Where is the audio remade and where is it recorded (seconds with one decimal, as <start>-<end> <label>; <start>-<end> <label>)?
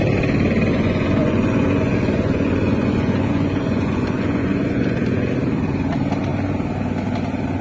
0.0-0.7 recorded; 0.7-5.3 remade; 5.3-7.6 recorded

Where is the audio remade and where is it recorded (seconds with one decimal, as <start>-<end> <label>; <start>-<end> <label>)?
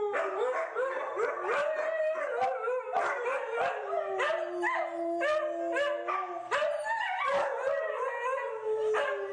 0.0-9.3 recorded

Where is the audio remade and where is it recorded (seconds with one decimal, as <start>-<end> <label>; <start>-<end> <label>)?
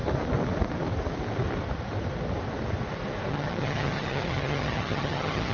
0.0-3.3 recorded; 3.3-5.5 remade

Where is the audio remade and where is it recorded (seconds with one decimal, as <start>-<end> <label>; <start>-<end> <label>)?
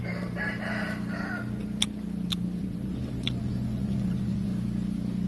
0.0-2.6 recorded; 2.6-4.5 remade; 4.5-5.3 recorded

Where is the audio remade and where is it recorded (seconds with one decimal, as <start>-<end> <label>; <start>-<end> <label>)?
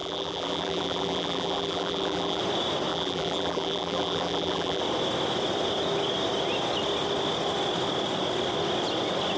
0.0-2.4 remade; 2.4-2.9 recorded; 2.9-4.8 remade; 4.8-9.4 recorded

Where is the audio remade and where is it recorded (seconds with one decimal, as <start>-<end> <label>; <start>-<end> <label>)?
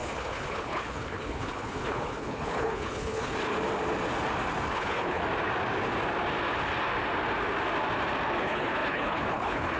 0.0-3.5 remade; 3.5-4.7 recorded; 4.7-5.2 remade; 5.2-8.4 recorded; 8.4-9.8 remade